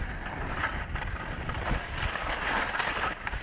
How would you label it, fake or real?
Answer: real